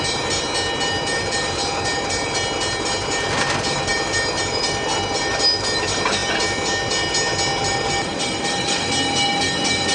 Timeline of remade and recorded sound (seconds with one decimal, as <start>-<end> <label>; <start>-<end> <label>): 0.0-9.9 recorded